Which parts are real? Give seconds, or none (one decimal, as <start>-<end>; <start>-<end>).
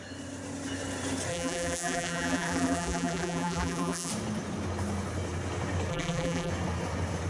0.0-1.3; 4.1-5.9; 6.5-7.3